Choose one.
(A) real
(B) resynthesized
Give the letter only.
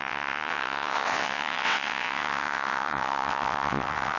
B